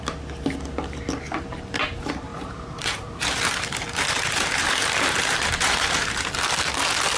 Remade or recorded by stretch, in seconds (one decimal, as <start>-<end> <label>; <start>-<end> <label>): 0.0-2.3 recorded; 2.3-6.3 remade; 6.3-7.2 recorded